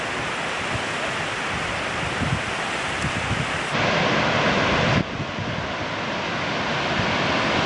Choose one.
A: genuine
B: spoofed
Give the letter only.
A